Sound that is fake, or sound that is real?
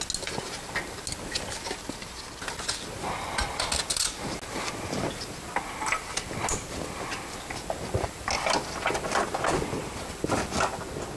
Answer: real